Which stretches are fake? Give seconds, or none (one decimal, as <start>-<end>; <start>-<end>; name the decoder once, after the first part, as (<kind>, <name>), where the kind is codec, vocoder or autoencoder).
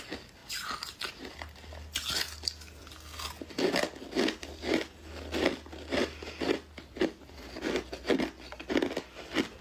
none